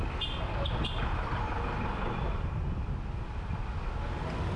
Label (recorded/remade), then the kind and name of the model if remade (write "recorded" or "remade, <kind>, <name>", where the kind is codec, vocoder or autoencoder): recorded